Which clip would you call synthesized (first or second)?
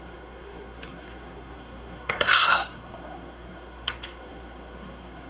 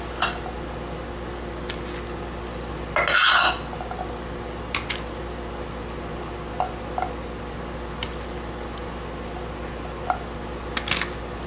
first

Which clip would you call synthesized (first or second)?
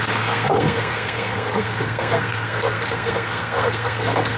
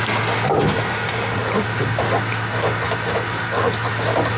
first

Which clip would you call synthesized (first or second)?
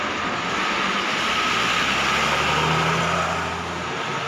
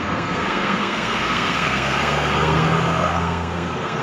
second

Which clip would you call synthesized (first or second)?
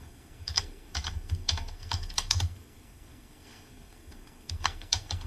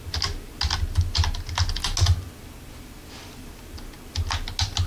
first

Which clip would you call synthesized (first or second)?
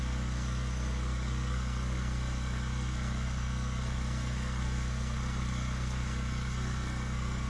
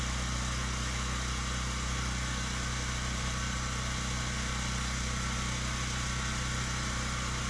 first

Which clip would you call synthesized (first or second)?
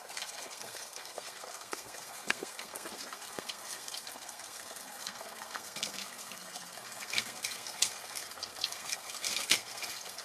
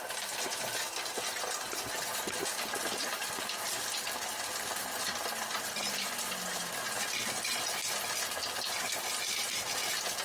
first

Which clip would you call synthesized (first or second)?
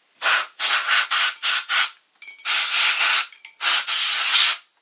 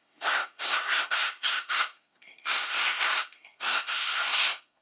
second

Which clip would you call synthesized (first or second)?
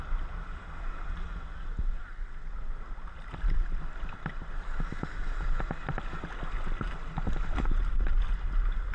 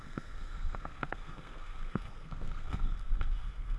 second